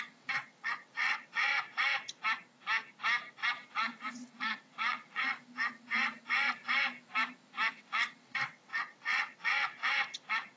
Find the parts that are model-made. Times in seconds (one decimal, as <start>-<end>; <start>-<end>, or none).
0.0-1.5; 3.5-5.3; 7.7-10.6

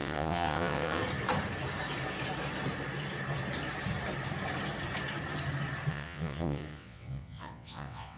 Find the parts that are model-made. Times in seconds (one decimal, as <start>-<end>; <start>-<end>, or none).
0.0-1.0; 5.9-8.2

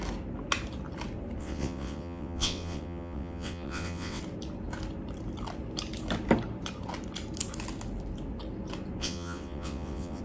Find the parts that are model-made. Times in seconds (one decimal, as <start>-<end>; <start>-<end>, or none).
1.4-4.2; 9.0-10.2